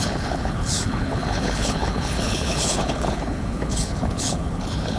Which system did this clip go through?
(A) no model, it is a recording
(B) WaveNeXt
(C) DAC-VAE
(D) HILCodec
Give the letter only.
D